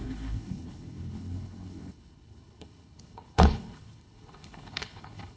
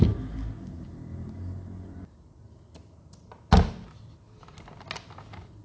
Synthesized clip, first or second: first